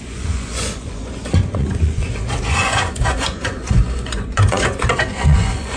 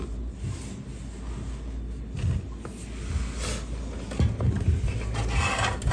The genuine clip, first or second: second